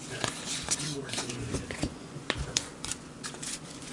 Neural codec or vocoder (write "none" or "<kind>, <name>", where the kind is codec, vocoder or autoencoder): vocoder, Vocos